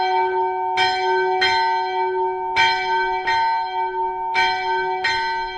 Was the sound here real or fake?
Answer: real